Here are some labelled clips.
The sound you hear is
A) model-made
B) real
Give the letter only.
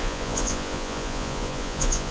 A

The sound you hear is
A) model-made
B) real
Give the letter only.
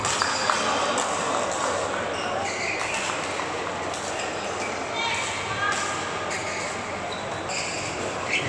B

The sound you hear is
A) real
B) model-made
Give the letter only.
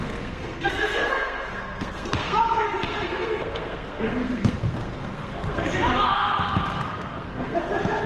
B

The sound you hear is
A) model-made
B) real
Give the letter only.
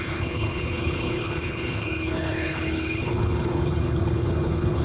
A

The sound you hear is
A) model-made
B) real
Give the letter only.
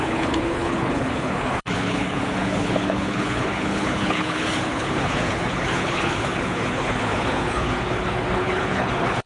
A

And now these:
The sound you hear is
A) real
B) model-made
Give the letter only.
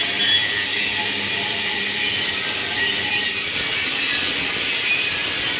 B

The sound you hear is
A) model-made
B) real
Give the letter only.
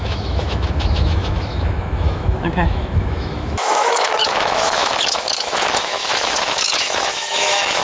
A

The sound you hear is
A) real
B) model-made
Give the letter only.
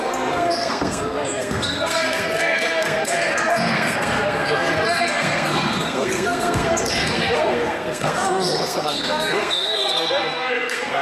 B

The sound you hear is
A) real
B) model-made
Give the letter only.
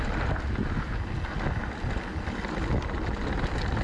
A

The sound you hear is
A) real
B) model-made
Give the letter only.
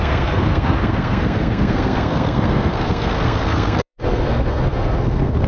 B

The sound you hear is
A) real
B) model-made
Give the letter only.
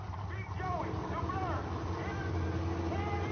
A